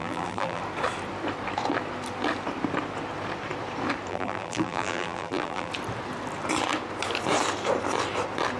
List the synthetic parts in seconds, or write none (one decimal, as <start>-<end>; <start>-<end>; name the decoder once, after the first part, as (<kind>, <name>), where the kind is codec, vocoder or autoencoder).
0.0-0.6 (vocoder, BigVGAN v2); 4.1-5.7

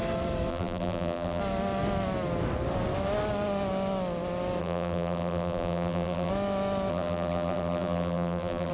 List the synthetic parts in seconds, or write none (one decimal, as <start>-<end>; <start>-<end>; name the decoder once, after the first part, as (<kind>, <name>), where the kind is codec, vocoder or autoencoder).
0.5-1.4 (vocoder, BigVGAN v2); 4.6-6.3; 6.9-8.7

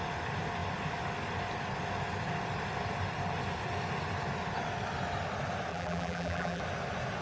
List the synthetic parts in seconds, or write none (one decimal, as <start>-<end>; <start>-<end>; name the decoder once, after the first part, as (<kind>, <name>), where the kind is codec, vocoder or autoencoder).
5.7-6.6 (vocoder, BigVGAN v2)

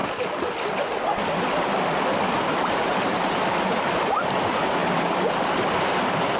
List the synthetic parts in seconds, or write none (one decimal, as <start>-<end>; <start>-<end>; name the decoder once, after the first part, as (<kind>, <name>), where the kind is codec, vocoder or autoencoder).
0.0-4.8 (vocoder, BigVGAN v2); 5.8-6.4

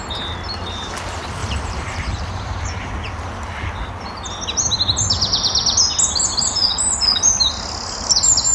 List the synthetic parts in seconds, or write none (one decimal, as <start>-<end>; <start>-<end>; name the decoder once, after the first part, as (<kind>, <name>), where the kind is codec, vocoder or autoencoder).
1.4-2.9 (vocoder, BigVGAN v2)

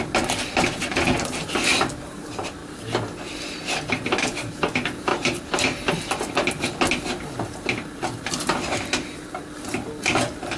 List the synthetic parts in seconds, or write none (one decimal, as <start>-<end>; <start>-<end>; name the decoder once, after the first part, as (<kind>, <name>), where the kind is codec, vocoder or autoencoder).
none

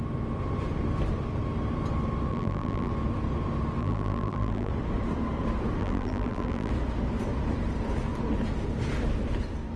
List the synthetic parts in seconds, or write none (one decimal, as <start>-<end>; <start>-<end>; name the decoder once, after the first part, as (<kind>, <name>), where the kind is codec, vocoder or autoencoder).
2.3-2.9 (vocoder, BigVGAN v2); 3.8-4.7; 5.8-6.7

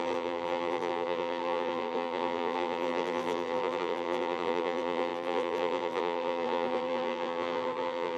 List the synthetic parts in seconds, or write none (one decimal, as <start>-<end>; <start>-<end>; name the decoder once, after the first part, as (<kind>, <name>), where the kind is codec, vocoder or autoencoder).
0.0-8.2 (vocoder, BigVGAN v2)